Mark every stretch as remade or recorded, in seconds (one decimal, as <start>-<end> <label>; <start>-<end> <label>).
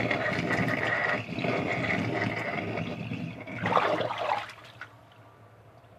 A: 0.0-6.0 recorded